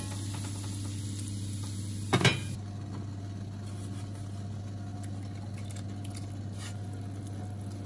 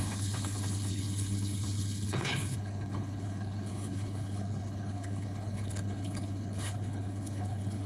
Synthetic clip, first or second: second